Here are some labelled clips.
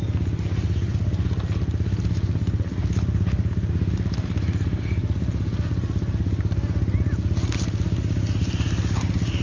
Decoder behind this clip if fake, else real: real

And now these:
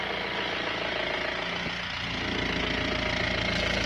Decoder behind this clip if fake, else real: real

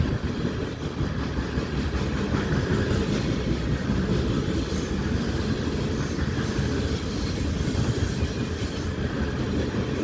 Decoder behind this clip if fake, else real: real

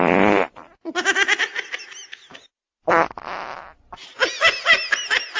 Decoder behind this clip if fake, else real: real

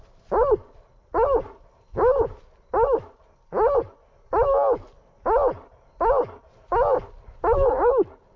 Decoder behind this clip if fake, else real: real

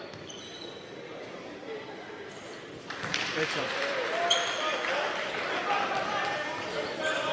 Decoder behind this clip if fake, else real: fake, vocoder, BigVGAN v2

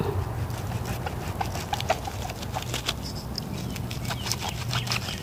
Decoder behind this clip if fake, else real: real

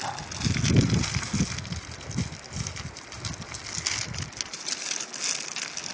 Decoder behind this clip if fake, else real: real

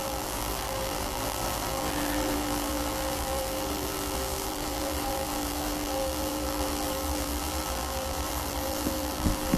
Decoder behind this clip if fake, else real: fake, vocoder, BigVGAN v2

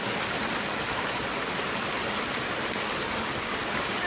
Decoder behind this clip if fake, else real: real